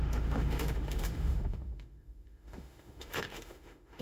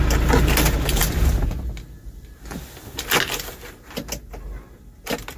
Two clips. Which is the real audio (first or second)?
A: second